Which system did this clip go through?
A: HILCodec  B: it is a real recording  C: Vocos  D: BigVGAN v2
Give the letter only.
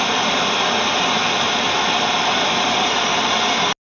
B